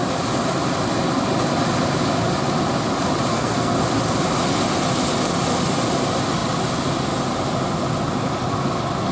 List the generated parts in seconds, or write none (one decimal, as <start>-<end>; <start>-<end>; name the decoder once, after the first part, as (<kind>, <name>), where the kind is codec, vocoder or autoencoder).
3.3-3.8 (codec, SNAC)